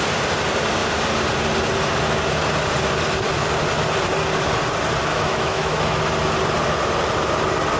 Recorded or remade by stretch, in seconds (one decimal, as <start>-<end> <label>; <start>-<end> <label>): 0.0-5.1 recorded; 5.1-6.0 remade; 6.0-7.8 recorded